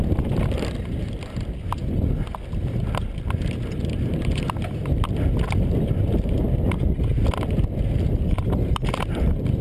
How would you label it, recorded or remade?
recorded